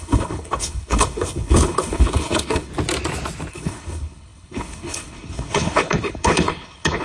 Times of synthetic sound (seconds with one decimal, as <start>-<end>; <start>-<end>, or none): 0.0-2.7; 3.5-7.0